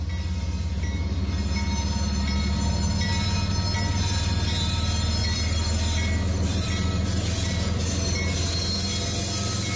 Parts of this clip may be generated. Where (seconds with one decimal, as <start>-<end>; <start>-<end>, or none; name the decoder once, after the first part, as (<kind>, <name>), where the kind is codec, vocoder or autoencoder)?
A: 5.2-7.8 (vocoder, BigVGAN v2)